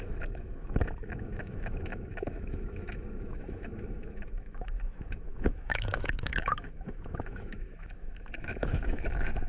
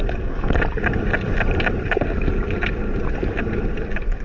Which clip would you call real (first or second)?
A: second